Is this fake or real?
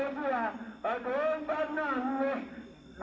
real